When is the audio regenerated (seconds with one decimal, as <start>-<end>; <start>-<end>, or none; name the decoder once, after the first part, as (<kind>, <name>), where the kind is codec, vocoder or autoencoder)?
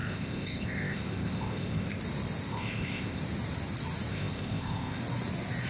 0.0-2.0 (codec, ZipCodec); 2.5-3.2; 4.1-5.0